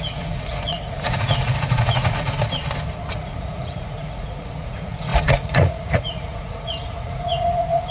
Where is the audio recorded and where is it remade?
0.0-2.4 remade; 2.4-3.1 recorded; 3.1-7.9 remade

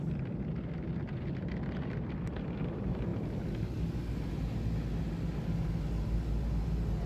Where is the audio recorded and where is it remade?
0.0-7.1 recorded

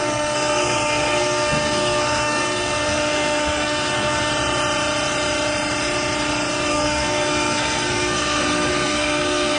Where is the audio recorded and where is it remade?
0.0-4.3 remade; 4.3-6.7 recorded; 6.7-9.6 remade

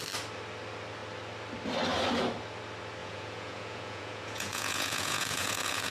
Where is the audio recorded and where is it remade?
0.0-3.0 recorded; 3.0-5.9 remade

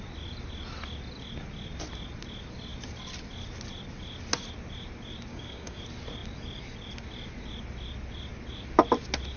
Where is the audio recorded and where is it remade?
0.0-5.3 recorded; 5.3-5.8 remade; 5.8-9.4 recorded

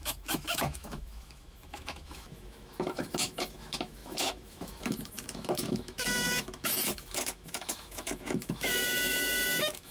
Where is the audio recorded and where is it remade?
0.0-9.9 remade

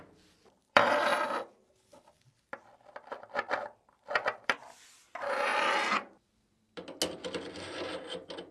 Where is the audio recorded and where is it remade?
0.0-1.1 remade; 1.1-2.4 recorded; 2.4-5.5 remade; 5.5-8.5 recorded

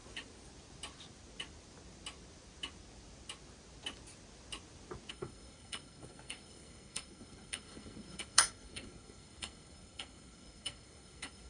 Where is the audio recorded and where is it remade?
0.0-5.1 recorded; 5.1-11.5 remade